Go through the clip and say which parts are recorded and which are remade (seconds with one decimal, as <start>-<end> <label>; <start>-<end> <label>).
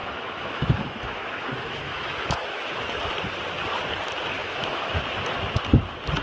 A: 0.0-2.8 remade; 2.8-4.4 recorded; 4.4-5.0 remade; 5.0-6.2 recorded